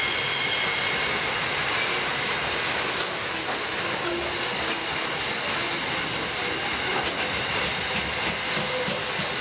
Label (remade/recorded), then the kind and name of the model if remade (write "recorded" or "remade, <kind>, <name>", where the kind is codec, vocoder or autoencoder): recorded